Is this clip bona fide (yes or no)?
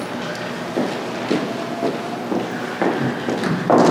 yes